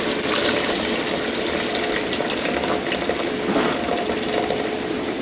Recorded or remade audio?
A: recorded